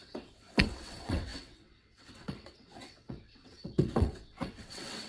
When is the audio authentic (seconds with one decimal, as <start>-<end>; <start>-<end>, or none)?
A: none